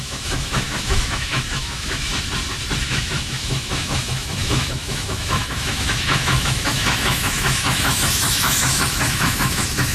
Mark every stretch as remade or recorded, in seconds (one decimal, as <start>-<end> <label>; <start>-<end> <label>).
0.0-2.1 remade; 2.1-2.8 recorded; 2.8-9.9 remade